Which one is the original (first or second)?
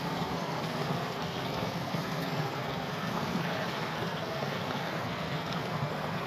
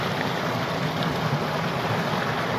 second